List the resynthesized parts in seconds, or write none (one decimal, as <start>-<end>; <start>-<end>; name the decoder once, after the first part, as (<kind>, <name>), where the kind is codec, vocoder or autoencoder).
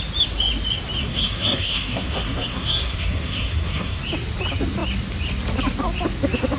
1.0-4.0 (codec, SNAC)